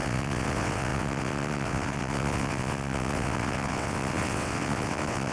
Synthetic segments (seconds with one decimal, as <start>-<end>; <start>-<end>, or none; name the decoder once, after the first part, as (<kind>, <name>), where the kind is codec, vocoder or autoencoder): 0.0-5.3 (vocoder, WaveNeXt)